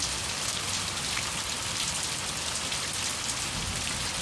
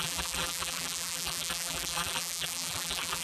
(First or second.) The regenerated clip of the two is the second